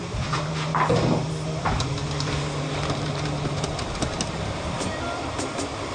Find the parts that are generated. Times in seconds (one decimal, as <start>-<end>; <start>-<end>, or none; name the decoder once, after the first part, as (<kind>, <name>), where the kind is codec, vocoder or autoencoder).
1.6-2.0 (vocoder, BigVGAN v2); 4.4-5.9